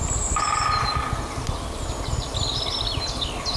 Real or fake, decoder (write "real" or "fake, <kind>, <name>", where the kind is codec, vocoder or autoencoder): real